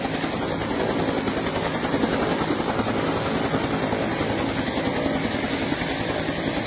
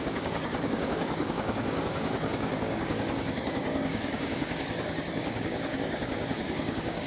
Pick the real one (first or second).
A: first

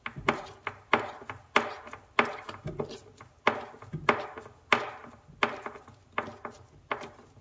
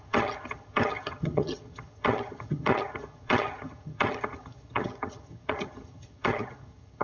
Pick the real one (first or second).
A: first